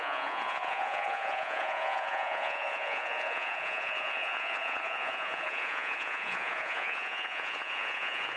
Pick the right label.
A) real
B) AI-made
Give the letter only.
B